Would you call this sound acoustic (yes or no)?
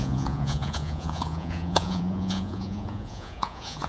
no